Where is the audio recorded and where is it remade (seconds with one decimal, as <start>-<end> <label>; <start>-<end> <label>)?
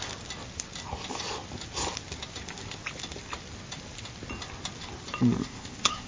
0.0-5.4 recorded; 5.4-6.1 remade